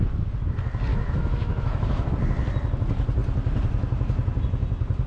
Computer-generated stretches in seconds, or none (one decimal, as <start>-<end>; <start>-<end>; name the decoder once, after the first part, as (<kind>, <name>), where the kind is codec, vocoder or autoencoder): 0.9-2.1 (autoencoder, DAC-VAE)